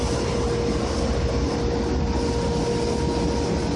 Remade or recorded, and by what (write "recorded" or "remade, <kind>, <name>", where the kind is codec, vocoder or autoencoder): recorded